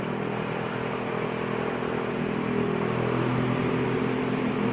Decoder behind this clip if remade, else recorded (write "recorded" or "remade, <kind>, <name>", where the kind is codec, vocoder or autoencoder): recorded